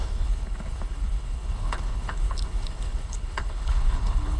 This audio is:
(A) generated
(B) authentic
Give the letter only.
A